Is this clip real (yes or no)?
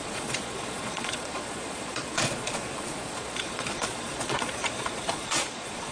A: no